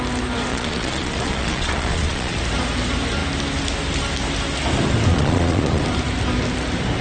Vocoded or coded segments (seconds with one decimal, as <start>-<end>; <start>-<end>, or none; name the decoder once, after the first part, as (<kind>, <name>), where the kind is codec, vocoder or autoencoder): 0.5-2.4 (vocoder, Vocos); 5.1-5.8